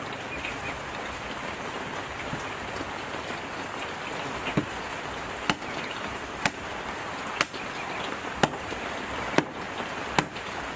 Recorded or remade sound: recorded